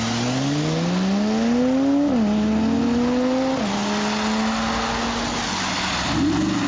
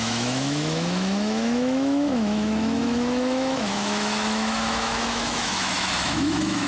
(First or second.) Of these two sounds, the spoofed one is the second